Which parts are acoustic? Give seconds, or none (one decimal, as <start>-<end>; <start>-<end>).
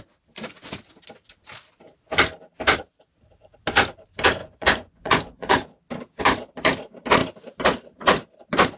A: 0.0-4.4; 5.7-8.8